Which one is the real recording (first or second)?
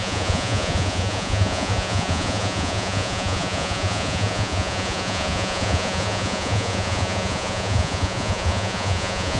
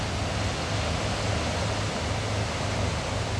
second